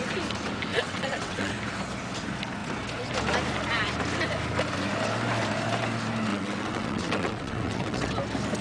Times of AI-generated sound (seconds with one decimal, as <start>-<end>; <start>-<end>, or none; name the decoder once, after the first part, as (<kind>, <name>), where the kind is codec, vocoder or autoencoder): 0.7-1.5 (vocoder, WaveNeXt); 6.3-8.1